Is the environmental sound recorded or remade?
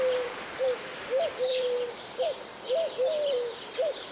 remade